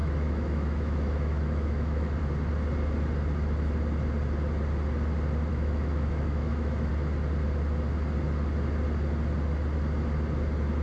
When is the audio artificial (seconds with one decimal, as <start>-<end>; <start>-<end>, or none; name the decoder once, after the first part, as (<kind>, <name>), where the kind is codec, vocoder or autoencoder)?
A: 0.0-2.2 (autoencoder, DAC-VAE); 5.5-6.9